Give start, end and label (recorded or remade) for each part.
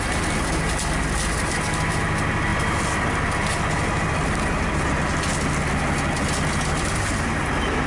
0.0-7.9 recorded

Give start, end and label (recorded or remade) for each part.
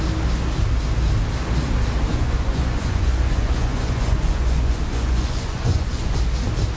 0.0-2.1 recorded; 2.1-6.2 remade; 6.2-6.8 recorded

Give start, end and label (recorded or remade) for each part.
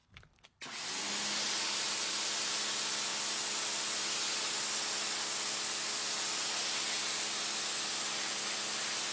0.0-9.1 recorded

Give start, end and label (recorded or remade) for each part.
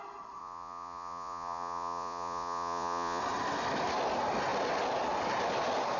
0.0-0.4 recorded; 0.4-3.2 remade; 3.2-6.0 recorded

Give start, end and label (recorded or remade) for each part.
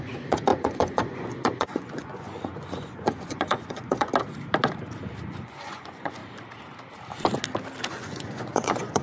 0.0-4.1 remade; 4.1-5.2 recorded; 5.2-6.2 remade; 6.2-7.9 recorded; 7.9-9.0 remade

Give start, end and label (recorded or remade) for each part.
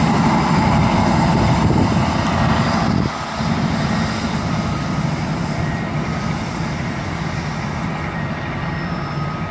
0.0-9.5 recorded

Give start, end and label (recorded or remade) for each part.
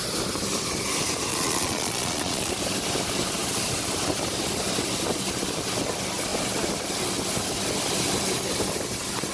0.0-1.3 recorded; 1.3-2.5 remade; 2.5-9.3 recorded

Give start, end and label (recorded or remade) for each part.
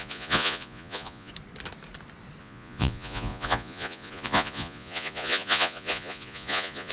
0.0-1.3 remade; 1.3-2.4 recorded; 2.4-6.9 remade